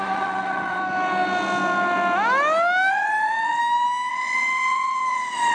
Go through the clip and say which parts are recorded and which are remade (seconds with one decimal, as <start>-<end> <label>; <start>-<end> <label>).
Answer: 0.0-0.8 remade; 0.8-2.9 recorded; 2.9-3.6 remade; 3.6-4.1 recorded; 4.1-5.5 remade